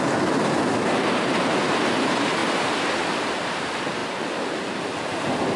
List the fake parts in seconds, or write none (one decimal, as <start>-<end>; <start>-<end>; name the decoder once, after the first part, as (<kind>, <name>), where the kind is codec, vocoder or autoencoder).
none